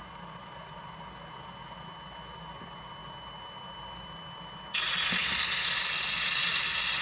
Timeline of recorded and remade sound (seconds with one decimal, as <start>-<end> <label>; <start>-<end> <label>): 0.0-7.0 recorded